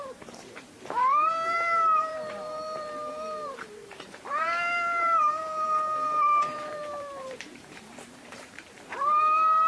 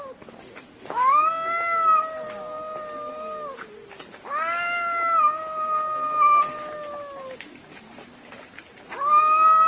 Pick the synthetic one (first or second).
first